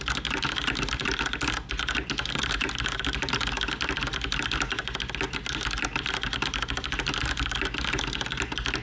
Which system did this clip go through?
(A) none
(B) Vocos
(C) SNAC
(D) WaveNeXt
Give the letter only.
A